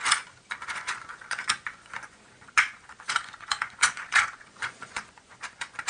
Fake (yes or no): yes